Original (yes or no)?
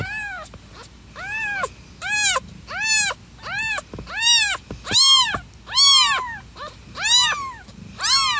yes